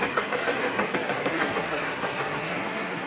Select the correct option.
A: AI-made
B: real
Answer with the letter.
A